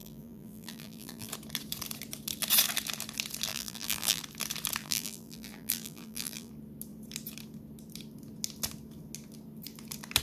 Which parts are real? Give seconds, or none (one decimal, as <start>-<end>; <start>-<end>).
1.3-3.5; 4.2-4.8; 6.5-10.2